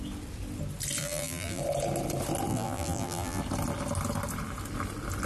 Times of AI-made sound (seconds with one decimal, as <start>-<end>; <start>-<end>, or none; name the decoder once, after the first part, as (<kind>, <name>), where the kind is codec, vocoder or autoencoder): 1.0-1.6 (vocoder, BigVGAN v2); 2.5-3.4